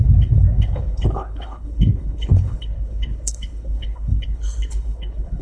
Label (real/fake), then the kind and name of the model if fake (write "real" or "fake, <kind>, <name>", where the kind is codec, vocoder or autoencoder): fake, codec, HILCodec